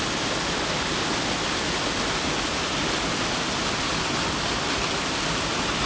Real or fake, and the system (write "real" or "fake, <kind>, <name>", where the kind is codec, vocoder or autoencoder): real